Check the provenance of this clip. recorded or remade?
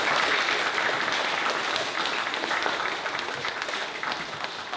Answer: recorded